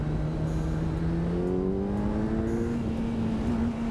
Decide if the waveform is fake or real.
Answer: real